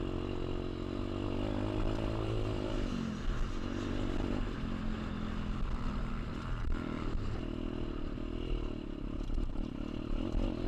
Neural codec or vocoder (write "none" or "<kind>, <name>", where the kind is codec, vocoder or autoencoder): none